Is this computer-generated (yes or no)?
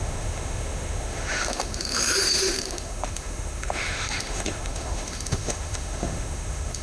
yes